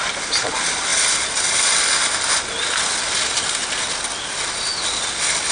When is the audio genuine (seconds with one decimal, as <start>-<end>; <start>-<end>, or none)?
0.0-5.5

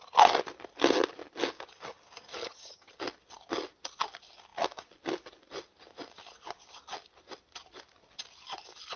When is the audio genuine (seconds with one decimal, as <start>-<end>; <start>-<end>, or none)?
0.0-2.4; 2.9-9.0

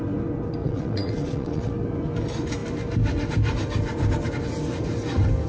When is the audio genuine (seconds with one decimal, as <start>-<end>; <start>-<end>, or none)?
0.0-0.6; 1.7-5.5